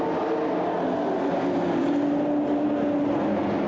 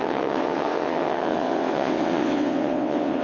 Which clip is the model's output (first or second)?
second